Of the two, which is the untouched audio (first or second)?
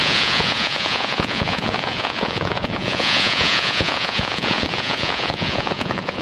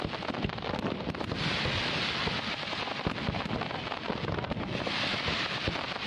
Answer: second